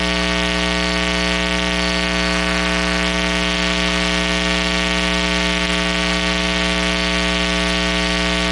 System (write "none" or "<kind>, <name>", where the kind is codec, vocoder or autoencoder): none